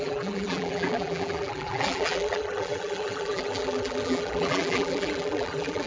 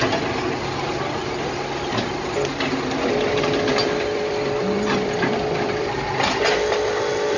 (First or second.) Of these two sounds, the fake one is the first